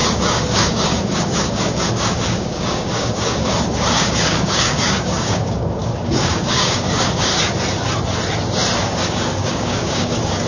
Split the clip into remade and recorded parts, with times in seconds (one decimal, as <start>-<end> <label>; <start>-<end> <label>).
0.0-7.3 remade; 7.3-8.8 recorded; 8.8-10.5 remade

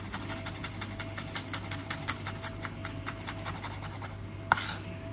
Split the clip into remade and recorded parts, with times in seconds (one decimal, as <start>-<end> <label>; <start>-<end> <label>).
0.0-5.1 recorded

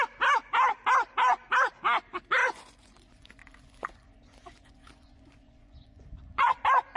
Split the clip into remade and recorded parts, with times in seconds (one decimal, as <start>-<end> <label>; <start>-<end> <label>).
0.0-2.4 recorded; 2.4-6.6 remade; 6.6-7.0 recorded

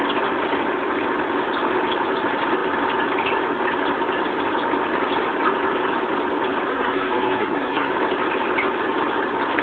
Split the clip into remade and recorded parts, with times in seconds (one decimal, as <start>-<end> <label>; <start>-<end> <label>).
0.0-6.7 recorded; 6.7-7.9 remade; 7.9-9.6 recorded

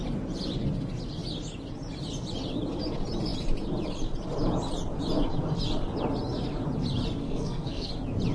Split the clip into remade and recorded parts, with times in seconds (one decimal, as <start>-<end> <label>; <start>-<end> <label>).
0.0-7.2 recorded; 7.2-7.9 remade; 7.9-8.3 recorded

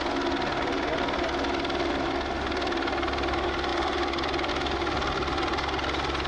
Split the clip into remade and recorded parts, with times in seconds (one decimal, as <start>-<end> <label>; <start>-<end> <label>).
0.0-6.3 recorded

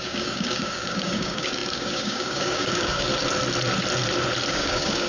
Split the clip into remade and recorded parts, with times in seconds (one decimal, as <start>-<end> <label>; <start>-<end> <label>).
0.0-3.1 remade; 3.1-4.5 recorded; 4.5-5.1 remade